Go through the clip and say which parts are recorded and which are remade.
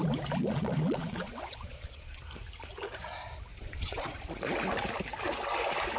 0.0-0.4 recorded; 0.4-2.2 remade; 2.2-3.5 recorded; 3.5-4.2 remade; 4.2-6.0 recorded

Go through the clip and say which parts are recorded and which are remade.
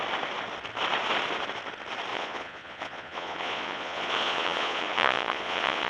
0.0-2.1 recorded; 2.1-5.9 remade